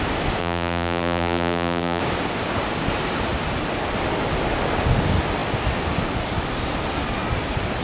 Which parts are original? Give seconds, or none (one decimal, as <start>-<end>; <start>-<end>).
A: 0.0-0.4; 2.0-7.8